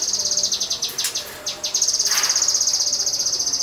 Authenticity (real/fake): real